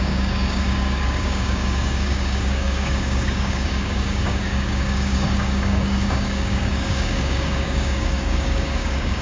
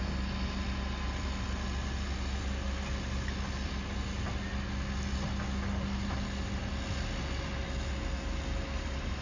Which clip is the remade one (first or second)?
first